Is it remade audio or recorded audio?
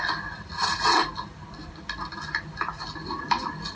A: recorded